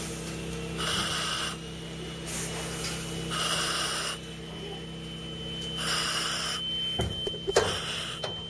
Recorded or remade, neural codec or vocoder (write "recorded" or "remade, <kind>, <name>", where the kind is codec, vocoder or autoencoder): recorded